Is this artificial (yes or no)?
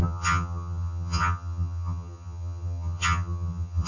yes